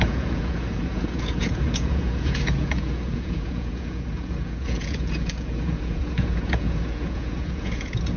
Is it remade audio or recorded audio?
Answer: remade